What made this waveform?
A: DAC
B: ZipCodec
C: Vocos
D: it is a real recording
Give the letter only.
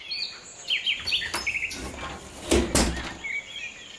D